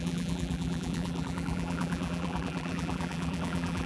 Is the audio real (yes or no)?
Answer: no